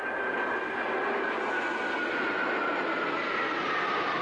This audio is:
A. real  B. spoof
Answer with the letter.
A